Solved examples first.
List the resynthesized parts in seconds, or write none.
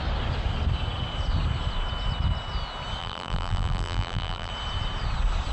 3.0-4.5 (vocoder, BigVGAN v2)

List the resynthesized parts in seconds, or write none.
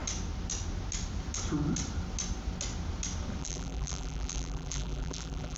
3.4-5.6 (vocoder, BigVGAN v2)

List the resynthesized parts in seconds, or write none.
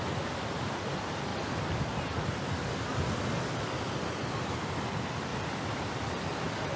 1.3-1.8 (vocoder, BigVGAN v2)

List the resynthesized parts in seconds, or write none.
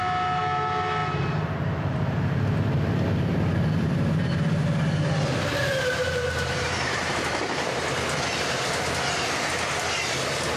5.7-7.8 (vocoder, BigVGAN v2)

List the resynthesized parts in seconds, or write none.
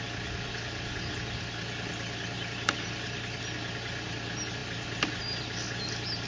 none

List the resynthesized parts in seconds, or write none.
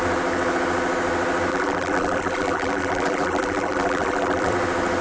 1.5-4.5 (vocoder, BigVGAN v2)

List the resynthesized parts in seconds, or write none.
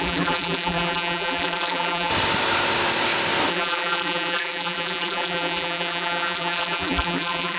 0.0-2.1 (vocoder, BigVGAN v2); 3.5-7.6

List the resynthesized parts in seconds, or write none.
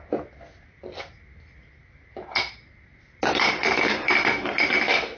2.9-4.7 (vocoder, BigVGAN v2)